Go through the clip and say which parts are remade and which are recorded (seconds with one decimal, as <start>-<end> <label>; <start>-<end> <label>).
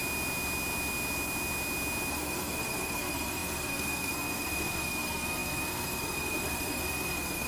0.0-2.1 recorded; 2.1-7.5 remade